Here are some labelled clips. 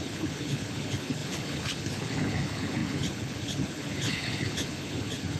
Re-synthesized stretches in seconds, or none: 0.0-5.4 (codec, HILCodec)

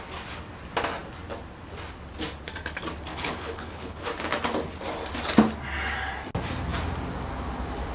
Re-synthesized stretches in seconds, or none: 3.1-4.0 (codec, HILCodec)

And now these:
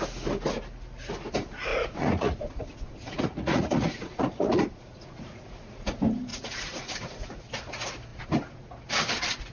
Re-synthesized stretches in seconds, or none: 1.7-5.7 (vocoder, Vocos); 6.3-7.4

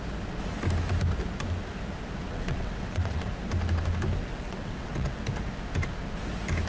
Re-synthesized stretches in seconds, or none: 2.3-3.3 (vocoder, WaveNeXt); 4.3-5.2

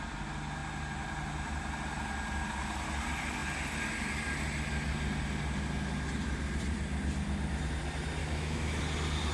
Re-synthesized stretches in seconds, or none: 8.2-8.8 (autoencoder, DAC-VAE)